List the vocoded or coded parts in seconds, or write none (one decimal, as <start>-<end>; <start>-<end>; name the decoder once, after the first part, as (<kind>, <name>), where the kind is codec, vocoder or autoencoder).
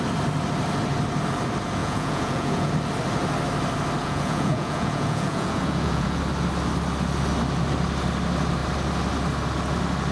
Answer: 1.8-2.7 (vocoder, Vocos); 4.0-6.2